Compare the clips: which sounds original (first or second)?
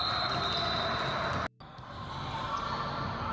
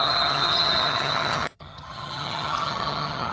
first